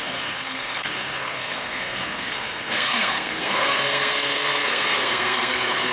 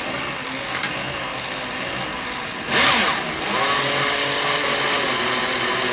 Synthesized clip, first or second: first